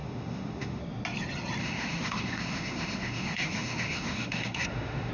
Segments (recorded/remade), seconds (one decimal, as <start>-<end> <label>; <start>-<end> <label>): 0.0-0.8 remade; 0.8-1.6 recorded; 1.6-5.1 remade